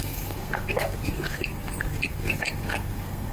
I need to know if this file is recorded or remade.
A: remade